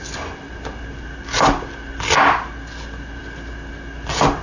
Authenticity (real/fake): real